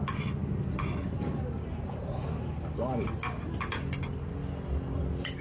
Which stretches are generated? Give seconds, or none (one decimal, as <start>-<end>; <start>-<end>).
4.4-5.4